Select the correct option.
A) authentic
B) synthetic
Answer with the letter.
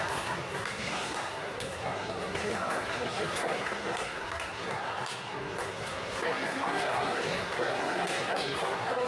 B